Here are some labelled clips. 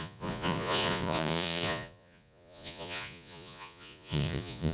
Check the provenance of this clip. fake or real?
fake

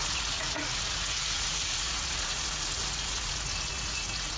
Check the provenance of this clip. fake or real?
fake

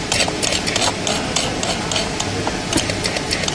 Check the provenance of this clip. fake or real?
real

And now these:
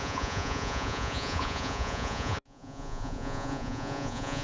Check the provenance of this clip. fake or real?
fake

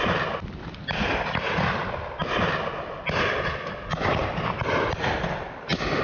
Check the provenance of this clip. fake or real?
real